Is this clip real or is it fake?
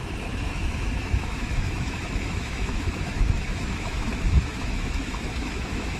fake